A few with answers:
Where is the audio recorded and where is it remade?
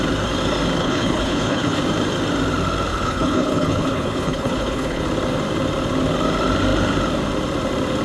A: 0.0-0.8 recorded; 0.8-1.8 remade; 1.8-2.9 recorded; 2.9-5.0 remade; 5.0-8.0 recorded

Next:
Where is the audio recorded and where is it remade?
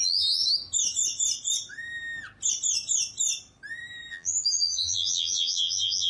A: 0.0-0.4 remade; 0.4-4.1 recorded; 4.1-6.1 remade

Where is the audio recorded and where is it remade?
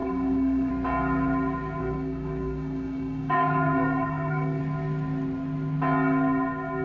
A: 0.0-0.7 remade; 0.7-1.8 recorded; 1.8-4.6 remade; 4.6-6.8 recorded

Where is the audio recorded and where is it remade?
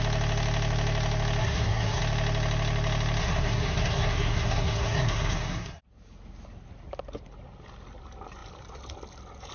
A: 0.0-1.4 recorded; 1.4-2.0 remade; 2.0-3.2 recorded; 3.2-5.8 remade; 5.8-9.5 recorded